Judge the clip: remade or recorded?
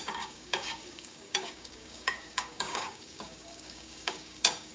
remade